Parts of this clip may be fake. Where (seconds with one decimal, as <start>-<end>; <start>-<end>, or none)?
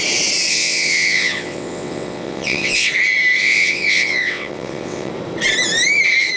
0.5-2.9; 3.4-5.1